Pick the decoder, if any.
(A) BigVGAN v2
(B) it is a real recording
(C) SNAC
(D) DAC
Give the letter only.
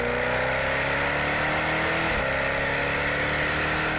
B